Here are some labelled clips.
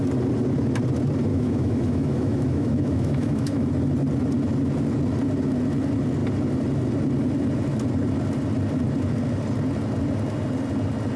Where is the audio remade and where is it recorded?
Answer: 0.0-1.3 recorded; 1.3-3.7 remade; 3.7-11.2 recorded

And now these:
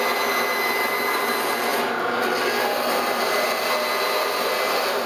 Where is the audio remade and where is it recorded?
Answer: 0.0-5.1 recorded

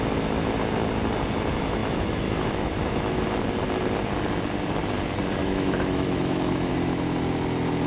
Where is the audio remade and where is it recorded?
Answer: 0.0-1.8 recorded; 1.8-3.2 remade; 3.2-5.4 recorded; 5.4-6.7 remade; 6.7-7.9 recorded

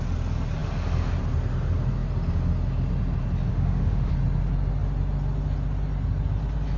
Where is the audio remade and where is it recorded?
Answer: 0.0-3.5 recorded; 3.5-4.1 remade; 4.1-6.8 recorded

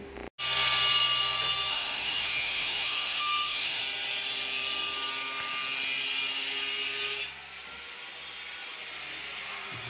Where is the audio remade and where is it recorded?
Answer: 0.0-1.7 recorded; 1.7-3.8 remade; 3.8-9.9 recorded

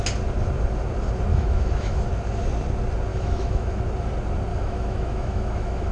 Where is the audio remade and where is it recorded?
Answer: 0.0-1.3 recorded; 1.3-2.0 remade; 2.0-3.1 recorded; 3.1-3.8 remade; 3.8-4.5 recorded; 4.5-5.9 remade

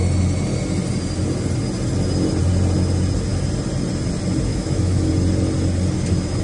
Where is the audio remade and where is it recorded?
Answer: 0.0-4.5 recorded; 4.5-5.1 remade; 5.1-6.4 recorded

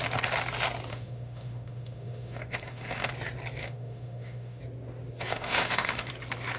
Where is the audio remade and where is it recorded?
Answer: 0.0-0.9 recorded; 0.9-3.1 remade; 3.1-3.6 recorded; 3.6-4.6 remade; 4.6-5.3 recorded; 5.3-6.1 remade; 6.1-6.6 recorded